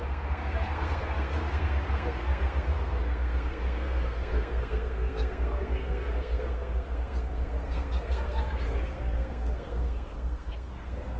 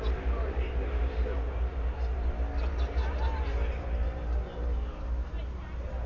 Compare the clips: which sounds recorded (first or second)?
second